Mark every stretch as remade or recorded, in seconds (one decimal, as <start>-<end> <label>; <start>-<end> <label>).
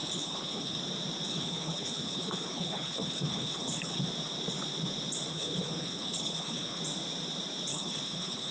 0.0-0.8 remade; 0.8-1.3 recorded; 1.3-4.0 remade; 4.0-5.3 recorded; 5.3-6.8 remade; 6.8-7.7 recorded; 7.7-8.5 remade